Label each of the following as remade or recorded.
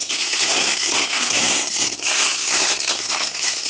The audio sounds remade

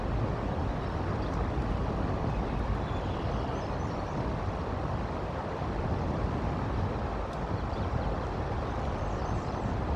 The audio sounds recorded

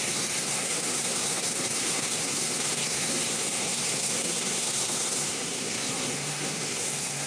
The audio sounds remade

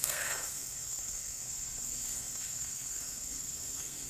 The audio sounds remade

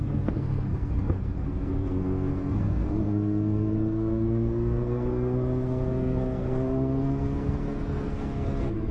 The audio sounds remade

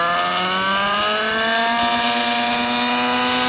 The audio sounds recorded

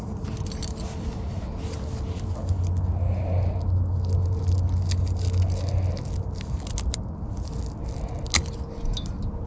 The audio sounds recorded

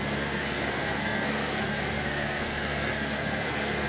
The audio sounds remade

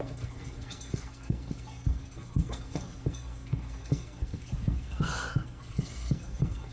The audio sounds remade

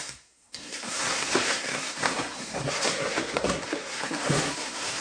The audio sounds remade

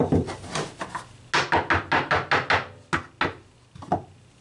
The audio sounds recorded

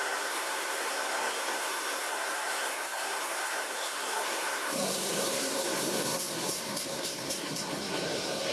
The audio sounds remade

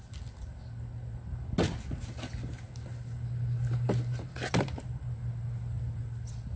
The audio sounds recorded